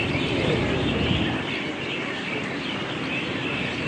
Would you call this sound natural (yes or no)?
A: yes